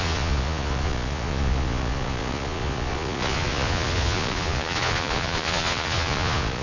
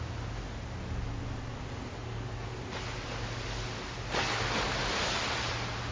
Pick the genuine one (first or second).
second